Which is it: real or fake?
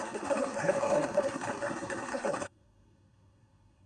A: fake